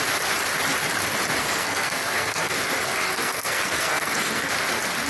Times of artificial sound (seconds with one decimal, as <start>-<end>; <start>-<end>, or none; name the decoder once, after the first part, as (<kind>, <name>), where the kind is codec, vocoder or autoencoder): 1.4-4.5 (codec, SNAC)